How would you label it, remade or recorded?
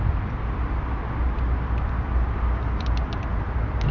recorded